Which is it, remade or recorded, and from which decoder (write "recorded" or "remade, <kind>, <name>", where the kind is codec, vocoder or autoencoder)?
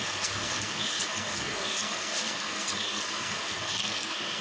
remade, codec, SNAC